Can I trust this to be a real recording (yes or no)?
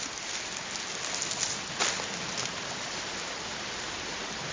yes